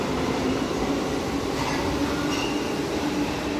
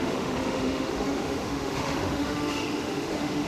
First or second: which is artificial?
second